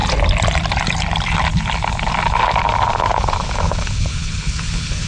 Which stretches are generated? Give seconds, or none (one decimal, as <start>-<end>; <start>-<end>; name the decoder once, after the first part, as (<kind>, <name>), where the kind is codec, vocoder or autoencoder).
3.1-5.1 (codec, HILCodec)